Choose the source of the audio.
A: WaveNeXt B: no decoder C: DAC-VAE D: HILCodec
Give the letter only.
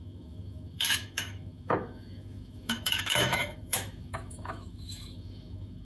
C